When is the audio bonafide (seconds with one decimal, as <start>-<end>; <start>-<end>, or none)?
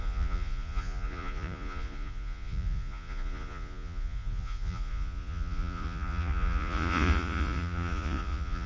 none